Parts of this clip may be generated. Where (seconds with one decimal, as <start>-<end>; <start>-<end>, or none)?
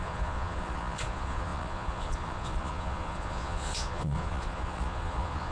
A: 0.0-5.5